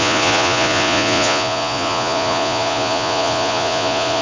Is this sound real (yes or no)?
no